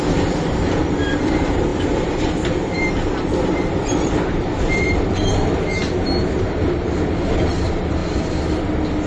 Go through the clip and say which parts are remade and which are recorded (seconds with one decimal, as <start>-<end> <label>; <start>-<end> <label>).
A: 0.0-5.8 remade; 5.8-7.5 recorded; 7.5-8.0 remade; 8.0-9.1 recorded